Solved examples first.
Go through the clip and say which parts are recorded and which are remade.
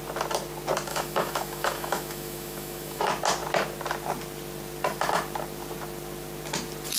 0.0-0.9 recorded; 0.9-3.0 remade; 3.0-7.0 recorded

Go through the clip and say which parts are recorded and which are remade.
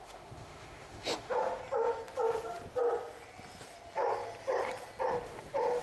0.0-1.6 remade; 1.6-5.1 recorded; 5.1-5.8 remade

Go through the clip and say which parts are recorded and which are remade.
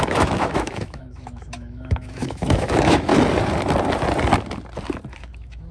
0.0-3.1 remade; 3.1-5.2 recorded; 5.2-5.7 remade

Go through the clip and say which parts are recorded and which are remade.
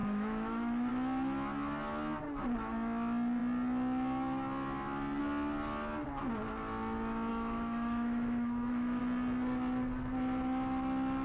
0.0-0.9 remade; 0.9-7.3 recorded; 7.3-9.0 remade; 9.0-11.2 recorded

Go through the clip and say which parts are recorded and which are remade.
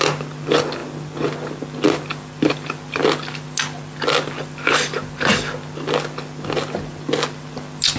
0.0-8.0 recorded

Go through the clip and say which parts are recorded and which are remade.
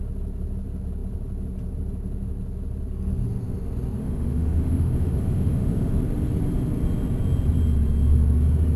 0.0-4.0 recorded; 4.0-5.9 remade; 5.9-8.8 recorded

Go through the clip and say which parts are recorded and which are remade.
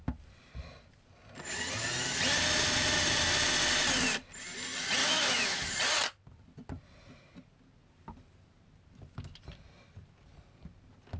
0.0-5.0 recorded; 5.0-5.7 remade; 5.7-11.2 recorded